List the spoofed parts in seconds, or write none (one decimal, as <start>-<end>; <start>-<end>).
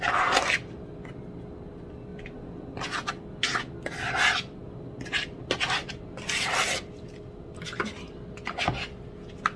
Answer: none